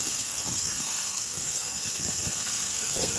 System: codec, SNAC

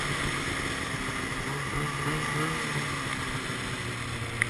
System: none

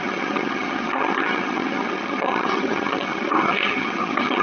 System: vocoder, HiFi-GAN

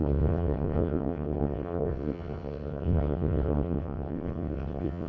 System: vocoder, WaveNeXt